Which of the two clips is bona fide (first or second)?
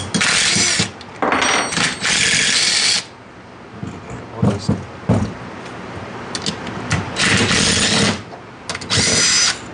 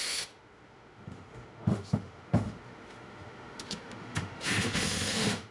first